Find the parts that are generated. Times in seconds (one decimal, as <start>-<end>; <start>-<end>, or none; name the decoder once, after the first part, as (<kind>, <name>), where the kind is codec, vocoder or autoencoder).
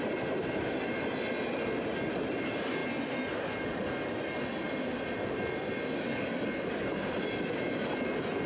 none